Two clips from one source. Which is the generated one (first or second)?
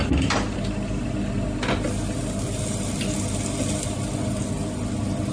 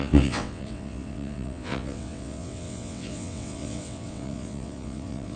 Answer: second